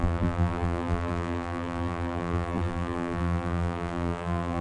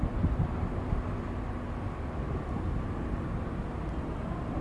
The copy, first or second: first